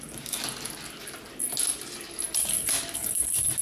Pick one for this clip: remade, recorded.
recorded